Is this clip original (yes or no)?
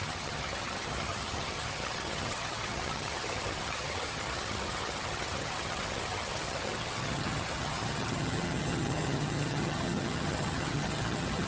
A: no